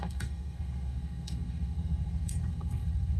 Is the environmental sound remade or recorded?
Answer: remade